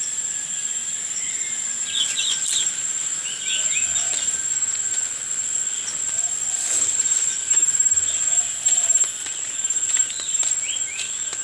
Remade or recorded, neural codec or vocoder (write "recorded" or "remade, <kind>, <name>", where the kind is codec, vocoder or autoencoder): recorded